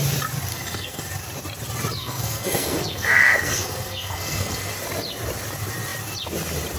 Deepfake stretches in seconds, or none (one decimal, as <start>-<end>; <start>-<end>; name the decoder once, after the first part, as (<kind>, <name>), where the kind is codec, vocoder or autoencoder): 0.5-1.0 (codec, SNAC); 2.0-4.7

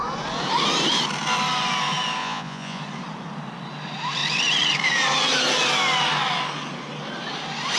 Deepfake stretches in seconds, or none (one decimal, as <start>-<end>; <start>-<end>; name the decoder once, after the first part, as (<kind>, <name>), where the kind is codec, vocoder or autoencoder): 2.2-2.8 (vocoder, Vocos)